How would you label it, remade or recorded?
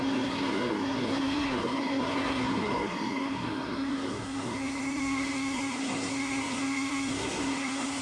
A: remade